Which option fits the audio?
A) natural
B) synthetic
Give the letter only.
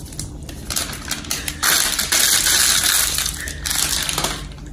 A